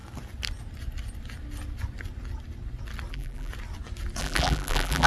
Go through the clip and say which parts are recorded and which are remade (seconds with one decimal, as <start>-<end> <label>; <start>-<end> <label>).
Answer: 0.0-3.1 recorded; 3.1-3.5 remade; 3.5-4.2 recorded; 4.2-5.1 remade